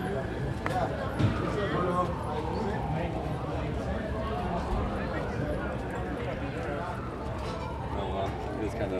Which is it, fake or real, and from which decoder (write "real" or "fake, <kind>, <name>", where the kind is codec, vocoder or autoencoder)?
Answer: fake, vocoder, BigVGAN v2